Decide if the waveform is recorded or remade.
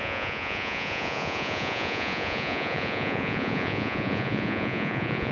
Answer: remade